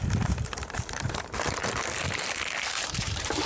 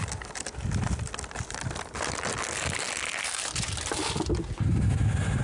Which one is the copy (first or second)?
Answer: first